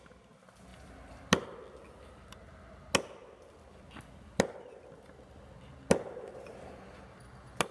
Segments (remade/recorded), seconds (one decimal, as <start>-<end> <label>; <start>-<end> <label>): 0.0-7.7 recorded